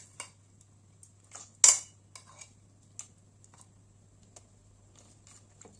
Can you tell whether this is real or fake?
real